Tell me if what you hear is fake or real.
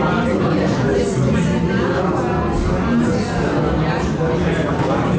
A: real